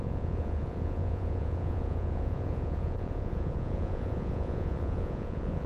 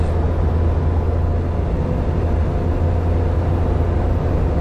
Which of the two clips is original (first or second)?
second